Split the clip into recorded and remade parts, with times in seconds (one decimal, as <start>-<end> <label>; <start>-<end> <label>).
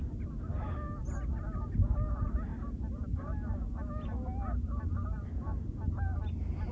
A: 0.0-6.7 recorded